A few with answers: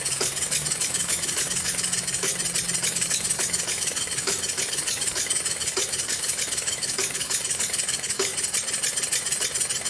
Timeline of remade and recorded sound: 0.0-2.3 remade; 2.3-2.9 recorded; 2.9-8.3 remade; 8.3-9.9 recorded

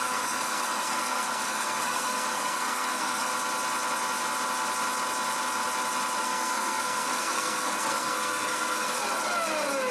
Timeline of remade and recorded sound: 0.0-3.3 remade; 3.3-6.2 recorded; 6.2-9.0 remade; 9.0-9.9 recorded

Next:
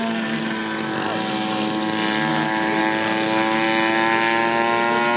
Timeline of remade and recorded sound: 0.0-2.3 recorded; 2.3-2.8 remade; 2.8-5.2 recorded

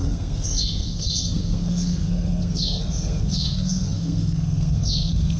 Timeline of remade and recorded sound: 0.0-5.4 remade

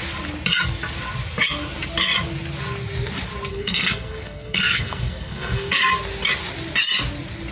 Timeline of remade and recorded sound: 0.0-3.5 recorded; 3.5-5.8 remade; 5.8-7.5 recorded